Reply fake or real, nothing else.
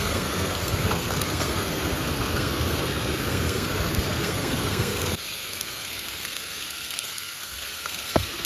fake